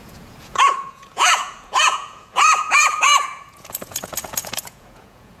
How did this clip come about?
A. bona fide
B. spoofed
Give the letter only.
B